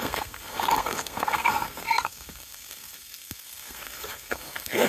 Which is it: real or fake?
fake